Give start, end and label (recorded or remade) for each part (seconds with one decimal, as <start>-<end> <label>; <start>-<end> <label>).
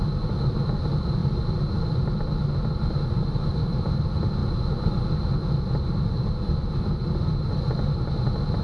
0.0-8.6 recorded